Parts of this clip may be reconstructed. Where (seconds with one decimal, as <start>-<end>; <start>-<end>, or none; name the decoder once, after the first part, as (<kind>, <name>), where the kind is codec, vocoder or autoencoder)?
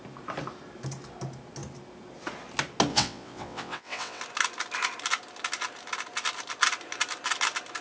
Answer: 2.9-4.2 (vocoder, WaveNeXt)